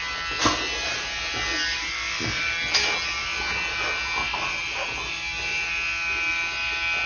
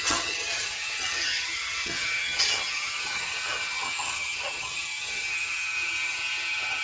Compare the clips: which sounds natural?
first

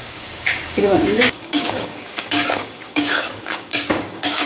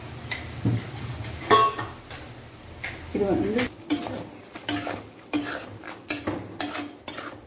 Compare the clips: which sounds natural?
second